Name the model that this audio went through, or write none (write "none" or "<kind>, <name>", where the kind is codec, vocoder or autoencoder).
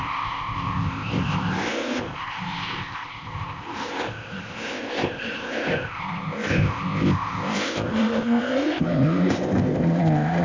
codec, ZipCodec